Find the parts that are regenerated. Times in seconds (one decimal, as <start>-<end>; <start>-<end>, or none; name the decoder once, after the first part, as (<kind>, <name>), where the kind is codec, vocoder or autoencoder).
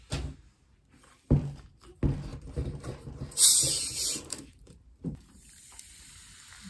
2.3-6.3 (vocoder, BigVGAN v2)